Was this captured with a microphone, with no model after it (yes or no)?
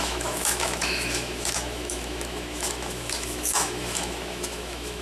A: no